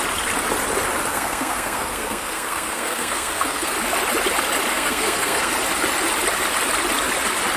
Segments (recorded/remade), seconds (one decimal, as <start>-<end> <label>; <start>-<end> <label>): 0.0-1.1 recorded; 1.1-3.7 remade; 3.7-4.7 recorded; 4.7-5.5 remade; 5.5-7.6 recorded